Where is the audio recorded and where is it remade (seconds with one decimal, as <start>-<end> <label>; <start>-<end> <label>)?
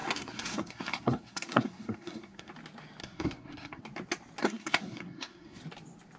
0.0-2.5 remade; 2.5-3.0 recorded; 3.0-3.8 remade; 3.8-4.4 recorded; 4.4-5.6 remade; 5.6-6.2 recorded